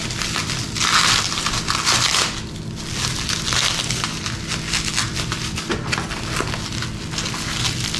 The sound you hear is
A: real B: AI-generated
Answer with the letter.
A